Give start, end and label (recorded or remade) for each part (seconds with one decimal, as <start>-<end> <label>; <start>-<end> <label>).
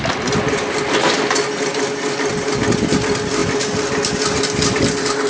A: 0.0-5.3 recorded